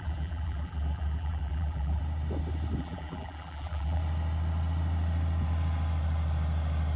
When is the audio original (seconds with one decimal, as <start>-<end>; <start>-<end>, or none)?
2.0-2.8; 4.0-7.0

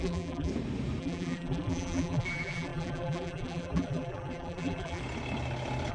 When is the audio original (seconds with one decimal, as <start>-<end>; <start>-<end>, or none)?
0.5-1.0; 5.0-5.9